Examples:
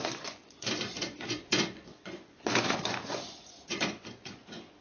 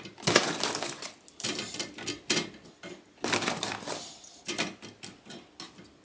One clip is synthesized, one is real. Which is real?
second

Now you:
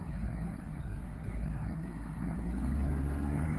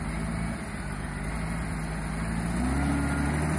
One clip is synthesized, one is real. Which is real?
second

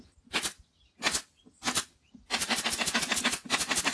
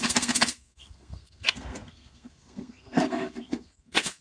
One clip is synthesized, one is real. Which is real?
first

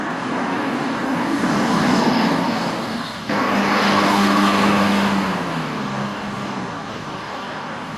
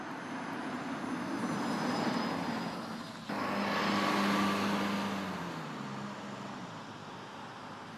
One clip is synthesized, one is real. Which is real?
second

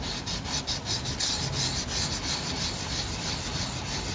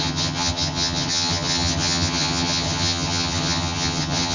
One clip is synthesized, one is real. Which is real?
first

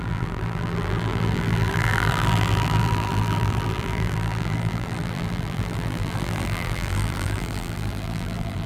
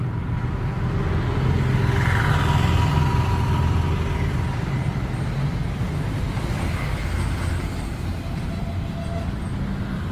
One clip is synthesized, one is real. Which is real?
second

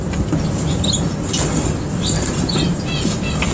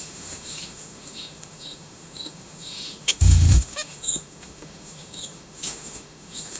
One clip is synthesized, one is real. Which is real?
first